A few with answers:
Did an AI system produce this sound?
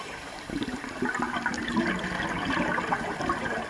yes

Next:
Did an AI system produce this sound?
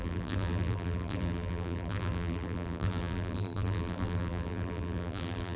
yes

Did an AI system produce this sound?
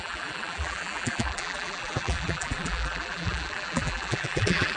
yes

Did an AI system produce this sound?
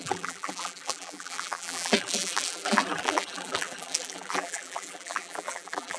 yes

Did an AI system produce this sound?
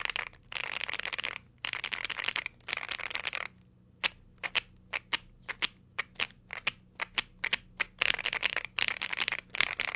no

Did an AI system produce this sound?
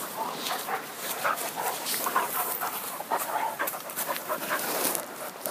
yes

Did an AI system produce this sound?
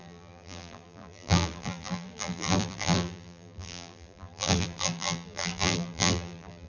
yes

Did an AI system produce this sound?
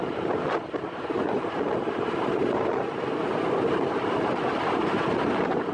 yes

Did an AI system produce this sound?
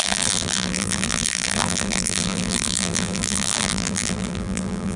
yes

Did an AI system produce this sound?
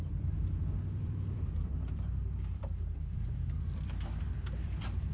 yes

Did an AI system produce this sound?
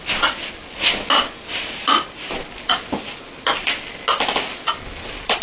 no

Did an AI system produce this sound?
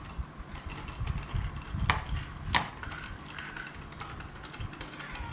no